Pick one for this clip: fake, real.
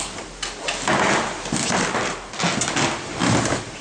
real